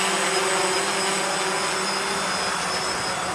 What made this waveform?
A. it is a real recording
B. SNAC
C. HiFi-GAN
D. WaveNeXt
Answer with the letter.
A